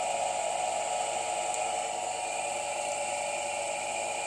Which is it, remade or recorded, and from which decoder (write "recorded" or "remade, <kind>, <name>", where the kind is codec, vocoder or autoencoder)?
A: recorded